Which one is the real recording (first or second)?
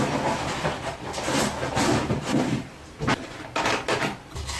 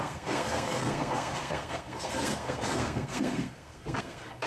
first